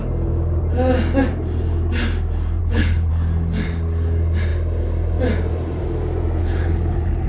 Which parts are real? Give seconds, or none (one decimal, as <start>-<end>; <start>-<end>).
0.0-2.6; 3.1-6.4